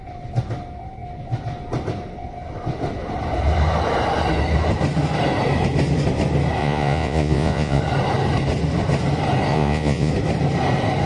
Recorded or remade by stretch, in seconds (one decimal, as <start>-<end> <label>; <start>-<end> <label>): 0.0-6.6 recorded; 6.6-7.8 remade; 7.8-9.5 recorded; 9.5-10.1 remade; 10.1-11.1 recorded